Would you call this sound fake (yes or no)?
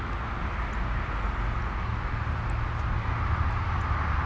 no